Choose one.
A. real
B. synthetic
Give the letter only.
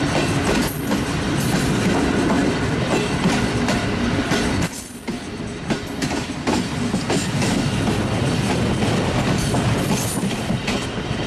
A